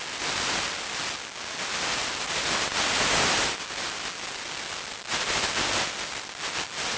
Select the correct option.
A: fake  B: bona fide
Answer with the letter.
B